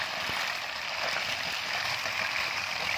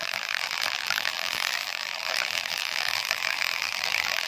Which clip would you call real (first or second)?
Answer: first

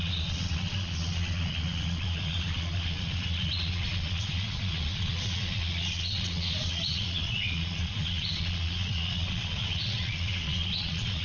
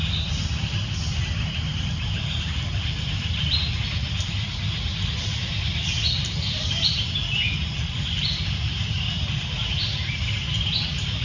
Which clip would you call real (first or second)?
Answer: second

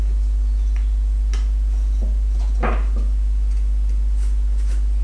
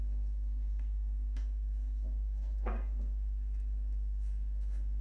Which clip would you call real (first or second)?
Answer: first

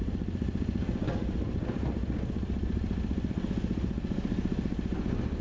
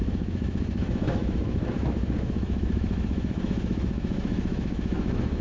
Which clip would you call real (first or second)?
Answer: first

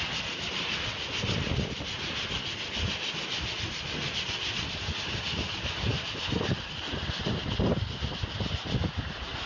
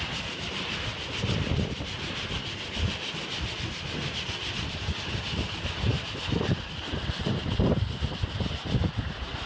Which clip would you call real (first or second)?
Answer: first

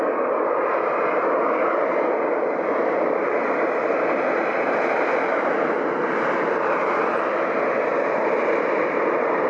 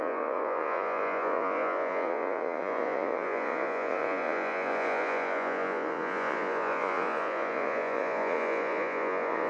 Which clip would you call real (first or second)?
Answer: first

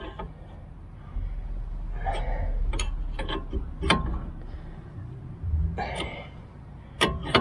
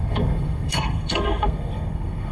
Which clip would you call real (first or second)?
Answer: first